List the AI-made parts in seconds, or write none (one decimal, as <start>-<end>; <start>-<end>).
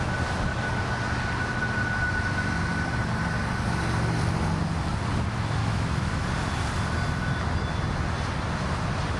5.6-6.1